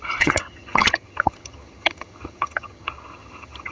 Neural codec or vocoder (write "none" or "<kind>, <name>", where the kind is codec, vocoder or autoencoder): vocoder, HiFi-GAN